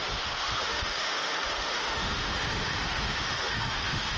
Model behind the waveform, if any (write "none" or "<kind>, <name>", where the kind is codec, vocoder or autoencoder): autoencoder, DAC-VAE